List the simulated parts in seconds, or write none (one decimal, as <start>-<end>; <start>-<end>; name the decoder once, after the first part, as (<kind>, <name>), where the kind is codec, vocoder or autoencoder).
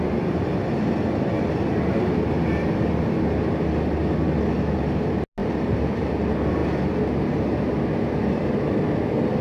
0.5-1.5 (vocoder, BigVGAN v2); 5.4-6.1